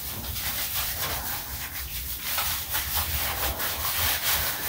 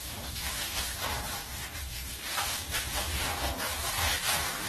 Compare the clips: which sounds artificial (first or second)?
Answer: second